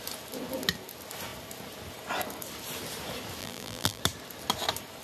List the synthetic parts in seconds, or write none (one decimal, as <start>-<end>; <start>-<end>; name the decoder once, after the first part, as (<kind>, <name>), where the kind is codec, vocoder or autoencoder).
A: 3.4-4.0 (vocoder, BigVGAN v2)